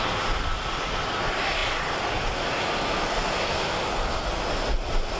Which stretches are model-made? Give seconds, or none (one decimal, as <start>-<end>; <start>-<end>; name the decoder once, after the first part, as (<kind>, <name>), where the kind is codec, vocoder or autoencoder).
none